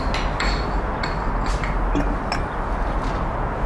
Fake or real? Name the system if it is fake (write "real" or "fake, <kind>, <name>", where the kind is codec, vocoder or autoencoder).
real